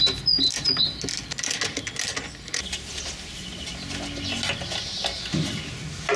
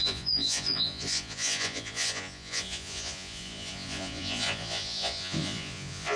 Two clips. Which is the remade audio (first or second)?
second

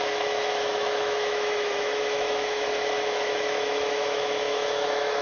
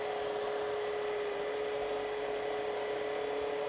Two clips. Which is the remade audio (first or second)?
first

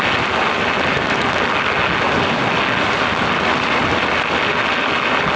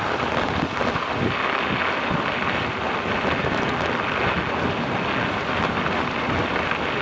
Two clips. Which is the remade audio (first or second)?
second